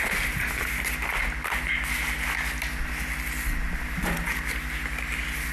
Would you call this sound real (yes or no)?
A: yes